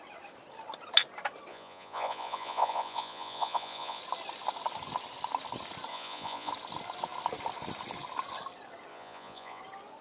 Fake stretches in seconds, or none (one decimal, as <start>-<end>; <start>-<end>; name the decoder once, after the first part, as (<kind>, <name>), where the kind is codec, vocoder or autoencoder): 1.5-4.0 (vocoder, Vocos); 5.9-6.5; 8.9-9.6